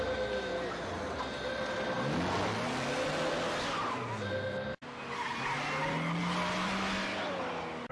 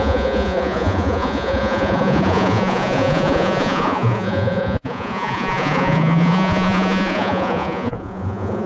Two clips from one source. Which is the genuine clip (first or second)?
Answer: first